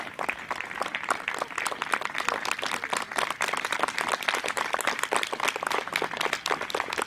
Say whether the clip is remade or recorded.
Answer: recorded